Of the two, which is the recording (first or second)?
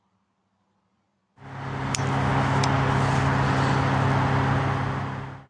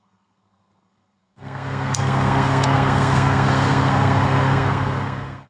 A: first